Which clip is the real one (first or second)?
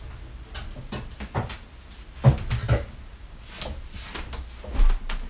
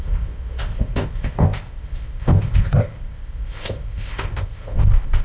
first